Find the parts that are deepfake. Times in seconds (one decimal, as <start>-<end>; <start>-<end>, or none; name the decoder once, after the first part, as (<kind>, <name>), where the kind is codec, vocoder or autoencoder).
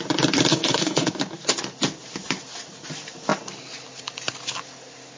0.5-1.1 (codec, HILCodec)